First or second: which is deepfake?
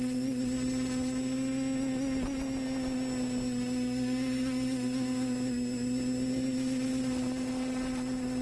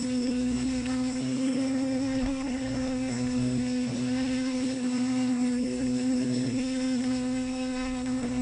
second